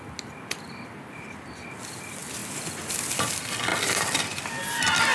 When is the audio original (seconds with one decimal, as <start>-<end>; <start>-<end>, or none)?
0.0-5.1